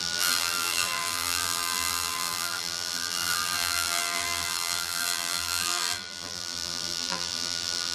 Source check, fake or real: fake